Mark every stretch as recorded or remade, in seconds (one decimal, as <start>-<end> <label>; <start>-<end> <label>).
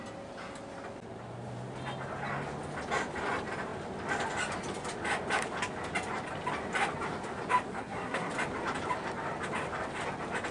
0.0-7.7 recorded; 7.7-8.3 remade; 8.3-10.5 recorded